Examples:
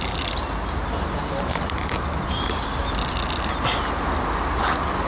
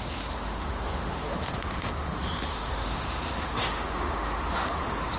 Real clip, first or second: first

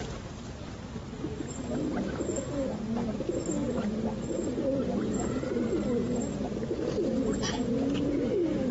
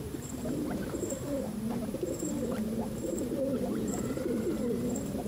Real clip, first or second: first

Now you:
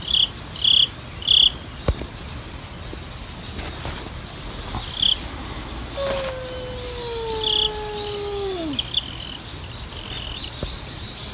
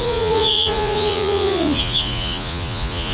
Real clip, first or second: first